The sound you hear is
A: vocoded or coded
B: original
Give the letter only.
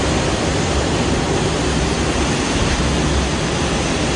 B